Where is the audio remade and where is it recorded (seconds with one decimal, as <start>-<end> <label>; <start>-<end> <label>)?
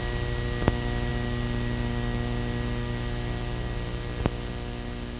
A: 0.0-5.2 recorded